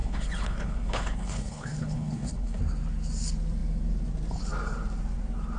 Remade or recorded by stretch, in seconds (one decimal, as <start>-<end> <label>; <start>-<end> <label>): 0.0-2.6 remade; 2.6-5.6 recorded